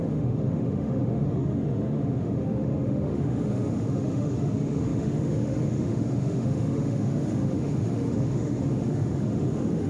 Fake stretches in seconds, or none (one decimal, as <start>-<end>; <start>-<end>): 0.0-9.9

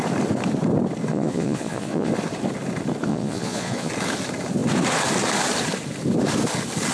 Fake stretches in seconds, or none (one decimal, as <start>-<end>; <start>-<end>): 1.1-2.1; 3.1-3.9

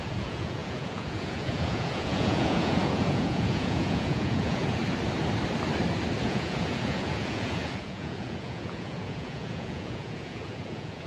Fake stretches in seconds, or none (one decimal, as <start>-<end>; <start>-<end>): 0.0-4.8; 6.2-11.1

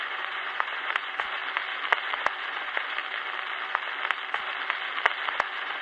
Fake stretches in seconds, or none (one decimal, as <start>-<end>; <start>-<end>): 0.0-1.4; 2.0-3.0; 5.3-5.8